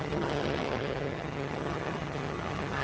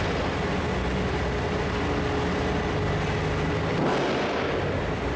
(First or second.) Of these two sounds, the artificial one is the first